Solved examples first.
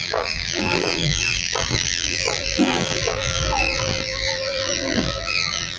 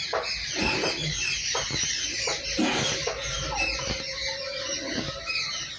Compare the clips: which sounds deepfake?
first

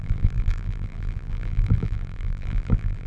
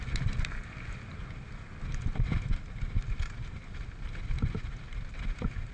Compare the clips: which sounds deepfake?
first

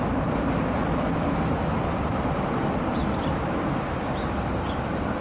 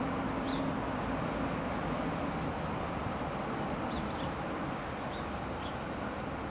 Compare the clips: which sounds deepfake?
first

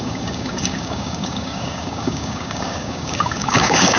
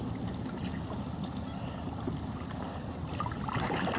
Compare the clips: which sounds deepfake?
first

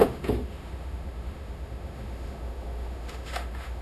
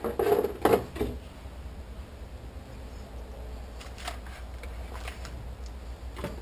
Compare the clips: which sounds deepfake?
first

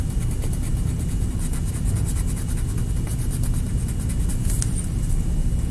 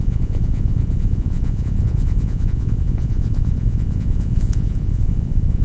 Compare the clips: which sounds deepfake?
second